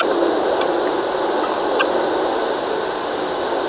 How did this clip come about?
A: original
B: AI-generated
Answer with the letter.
A